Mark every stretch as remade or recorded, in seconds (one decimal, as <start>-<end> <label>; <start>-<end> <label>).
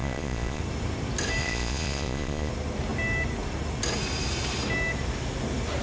0.0-0.6 remade; 0.6-1.4 recorded; 1.4-2.5 remade; 2.5-5.8 recorded